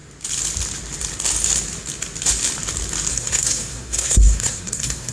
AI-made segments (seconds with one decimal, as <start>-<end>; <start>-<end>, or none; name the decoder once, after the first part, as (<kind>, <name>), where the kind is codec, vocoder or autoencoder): 3.1-5.1 (codec, SNAC)